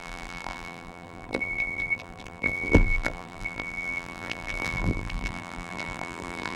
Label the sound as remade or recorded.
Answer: remade